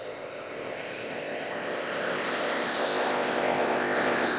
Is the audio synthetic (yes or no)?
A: yes